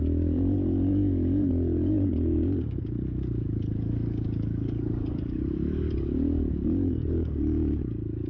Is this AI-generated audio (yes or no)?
yes